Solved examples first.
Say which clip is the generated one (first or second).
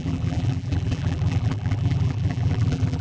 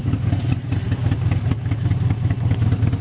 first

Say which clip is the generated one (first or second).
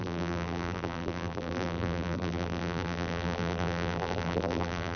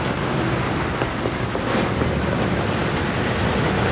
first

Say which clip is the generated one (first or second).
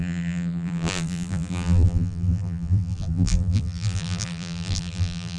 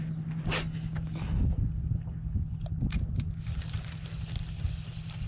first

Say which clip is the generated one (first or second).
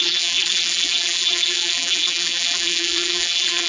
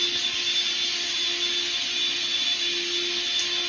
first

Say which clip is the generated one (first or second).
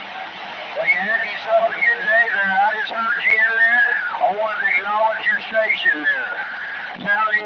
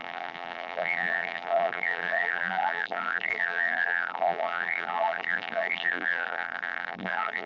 second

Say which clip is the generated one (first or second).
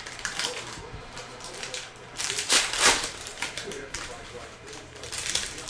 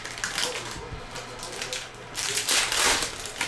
first